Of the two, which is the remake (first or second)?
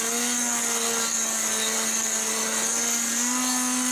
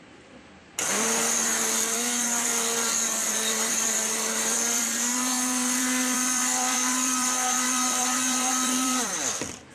second